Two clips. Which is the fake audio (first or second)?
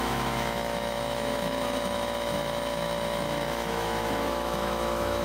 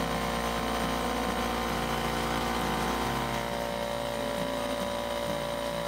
first